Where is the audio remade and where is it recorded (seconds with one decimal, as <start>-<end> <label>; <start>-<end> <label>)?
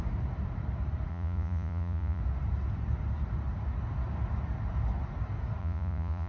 0.0-1.1 recorded; 1.1-2.2 remade; 2.2-5.6 recorded; 5.6-6.3 remade